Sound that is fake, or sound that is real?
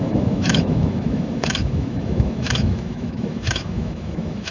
fake